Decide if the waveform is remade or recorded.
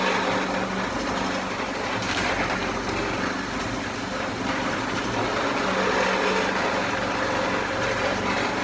recorded